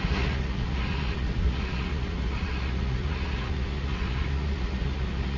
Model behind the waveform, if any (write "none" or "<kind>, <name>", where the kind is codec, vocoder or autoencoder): vocoder, Vocos